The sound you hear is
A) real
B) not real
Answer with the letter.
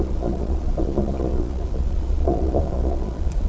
B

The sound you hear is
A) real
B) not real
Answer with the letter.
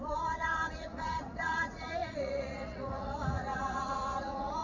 B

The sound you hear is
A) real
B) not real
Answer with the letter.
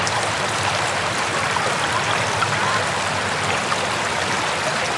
A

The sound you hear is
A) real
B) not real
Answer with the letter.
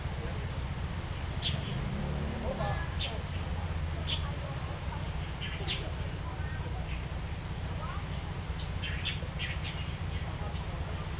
A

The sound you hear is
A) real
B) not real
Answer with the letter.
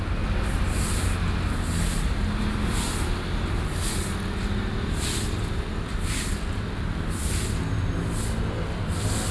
A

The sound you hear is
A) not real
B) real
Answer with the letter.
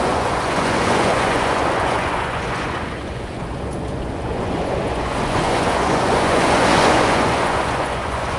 A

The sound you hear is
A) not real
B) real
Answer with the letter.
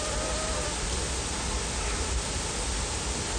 B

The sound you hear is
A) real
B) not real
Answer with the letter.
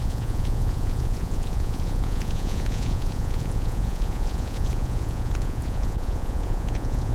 B